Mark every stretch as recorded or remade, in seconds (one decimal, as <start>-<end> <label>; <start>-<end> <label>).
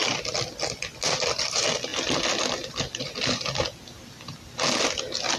0.0-5.4 recorded